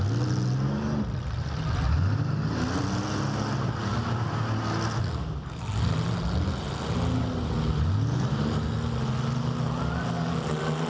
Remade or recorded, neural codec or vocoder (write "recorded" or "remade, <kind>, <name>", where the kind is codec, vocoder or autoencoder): recorded